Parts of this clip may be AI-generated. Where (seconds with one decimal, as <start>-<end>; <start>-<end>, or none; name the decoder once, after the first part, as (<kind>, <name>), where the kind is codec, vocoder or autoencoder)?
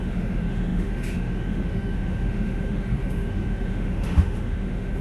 0.0-5.0 (autoencoder, DAC-VAE)